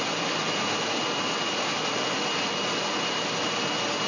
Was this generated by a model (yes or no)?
no